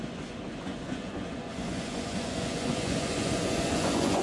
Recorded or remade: remade